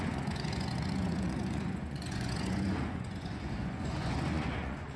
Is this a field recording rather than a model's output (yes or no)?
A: no